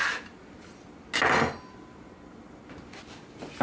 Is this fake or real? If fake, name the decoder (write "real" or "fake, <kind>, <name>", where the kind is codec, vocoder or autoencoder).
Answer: real